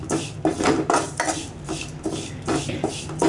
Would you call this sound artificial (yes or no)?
no